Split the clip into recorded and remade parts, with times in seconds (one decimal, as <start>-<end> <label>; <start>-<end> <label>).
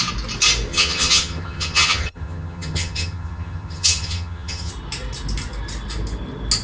0.0-0.7 recorded; 0.7-4.7 remade; 4.7-6.6 recorded